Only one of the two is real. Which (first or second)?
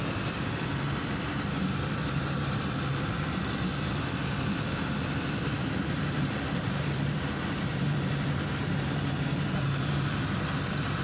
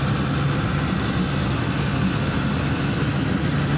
second